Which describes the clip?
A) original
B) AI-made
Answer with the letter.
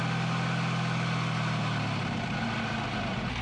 A